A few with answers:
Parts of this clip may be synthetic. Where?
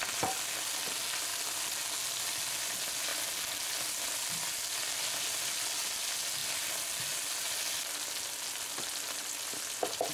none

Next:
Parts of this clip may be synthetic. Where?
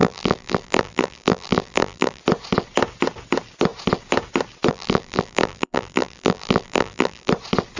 0.0-2.2 (vocoder, BigVGAN v2); 4.7-7.3